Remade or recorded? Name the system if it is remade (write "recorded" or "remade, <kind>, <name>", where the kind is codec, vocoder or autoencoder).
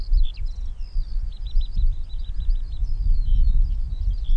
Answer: recorded